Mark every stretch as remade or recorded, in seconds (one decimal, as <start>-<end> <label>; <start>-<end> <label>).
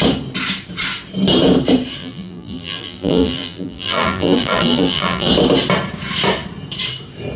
0.0-2.0 recorded; 2.0-5.3 remade; 5.3-7.4 recorded